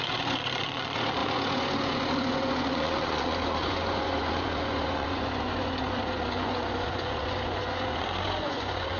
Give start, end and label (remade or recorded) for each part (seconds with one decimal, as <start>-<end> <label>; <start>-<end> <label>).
0.0-9.0 remade